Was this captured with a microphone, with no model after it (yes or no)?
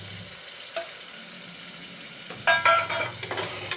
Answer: yes